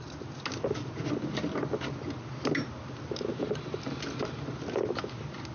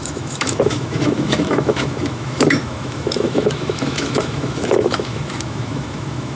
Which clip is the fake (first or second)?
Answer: second